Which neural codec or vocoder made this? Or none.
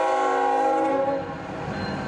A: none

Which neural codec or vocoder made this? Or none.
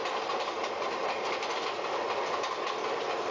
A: none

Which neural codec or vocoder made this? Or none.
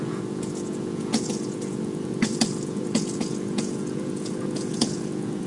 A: vocoder, Vocos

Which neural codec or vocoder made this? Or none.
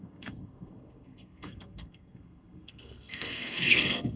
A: codec, SNAC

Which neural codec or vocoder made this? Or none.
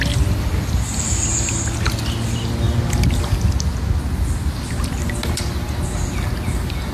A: none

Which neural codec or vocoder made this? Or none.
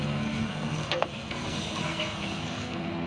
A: codec, SNAC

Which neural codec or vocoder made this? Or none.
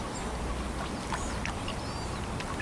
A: none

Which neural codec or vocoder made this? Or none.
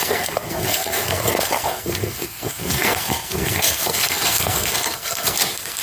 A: codec, SNAC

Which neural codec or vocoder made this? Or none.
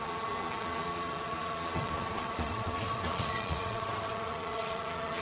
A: vocoder, Vocos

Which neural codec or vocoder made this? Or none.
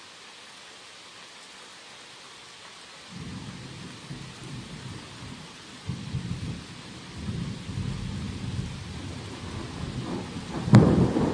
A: none